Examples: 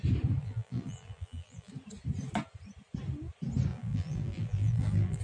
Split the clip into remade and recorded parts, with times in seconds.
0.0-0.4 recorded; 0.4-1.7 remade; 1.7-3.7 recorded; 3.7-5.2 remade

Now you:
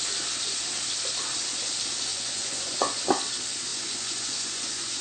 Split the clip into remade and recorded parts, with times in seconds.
0.0-2.1 recorded; 2.1-3.0 remade; 3.0-3.7 recorded; 3.7-5.0 remade

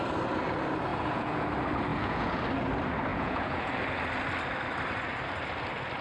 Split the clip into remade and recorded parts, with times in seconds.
0.0-0.9 recorded; 0.9-1.5 remade; 1.5-1.9 recorded; 1.9-2.4 remade; 2.4-3.1 recorded; 3.1-3.7 remade; 3.7-6.0 recorded

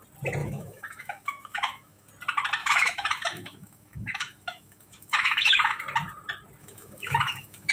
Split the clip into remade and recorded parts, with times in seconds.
0.0-0.4 recorded; 0.4-2.1 remade; 2.1-2.6 recorded; 2.6-5.8 remade; 5.8-6.6 recorded; 6.6-7.7 remade

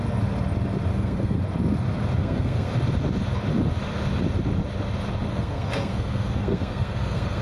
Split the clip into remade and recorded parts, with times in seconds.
0.0-0.9 recorded; 0.9-1.4 remade; 1.4-2.2 recorded; 2.2-2.7 remade; 2.7-5.3 recorded; 5.3-7.4 remade